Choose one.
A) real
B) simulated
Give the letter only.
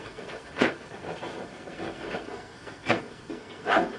B